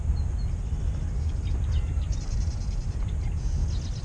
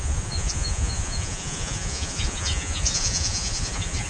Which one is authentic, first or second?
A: first